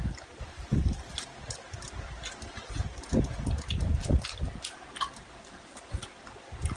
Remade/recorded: recorded